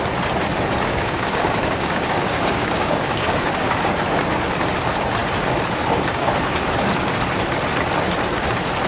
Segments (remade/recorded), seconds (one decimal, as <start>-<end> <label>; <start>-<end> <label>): 0.0-0.9 recorded; 0.9-3.9 remade; 3.9-8.9 recorded